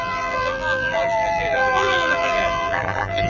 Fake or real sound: fake